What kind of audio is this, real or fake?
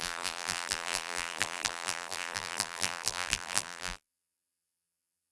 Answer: fake